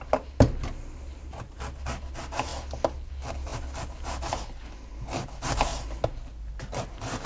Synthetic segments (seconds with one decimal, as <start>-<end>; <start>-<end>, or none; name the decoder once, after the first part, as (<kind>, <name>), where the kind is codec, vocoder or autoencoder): none